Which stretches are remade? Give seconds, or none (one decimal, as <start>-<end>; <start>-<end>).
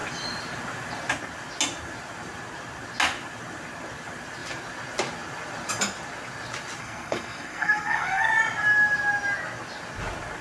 6.8-8.3